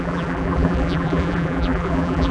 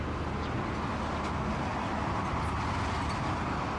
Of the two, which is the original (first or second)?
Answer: second